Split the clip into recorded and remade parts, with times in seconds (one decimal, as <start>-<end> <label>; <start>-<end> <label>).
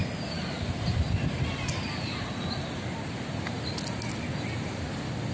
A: 0.0-5.3 recorded